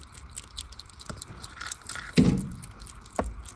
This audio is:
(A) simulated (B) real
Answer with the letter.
B